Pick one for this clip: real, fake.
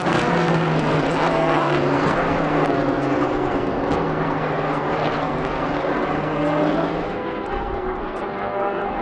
fake